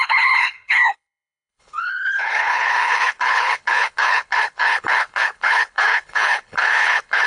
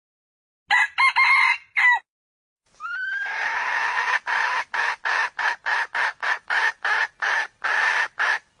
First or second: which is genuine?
second